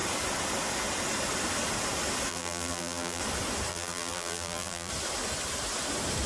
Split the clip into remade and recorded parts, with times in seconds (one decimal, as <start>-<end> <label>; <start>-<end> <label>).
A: 0.0-2.3 recorded; 2.3-3.2 remade; 3.2-3.7 recorded; 3.7-4.9 remade; 4.9-6.3 recorded